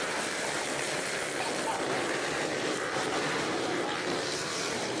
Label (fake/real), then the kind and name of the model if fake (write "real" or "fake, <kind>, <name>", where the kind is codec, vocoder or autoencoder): fake, vocoder, BigVGAN v2